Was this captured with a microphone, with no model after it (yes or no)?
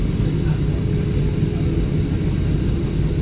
yes